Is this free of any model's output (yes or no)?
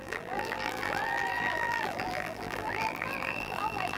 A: no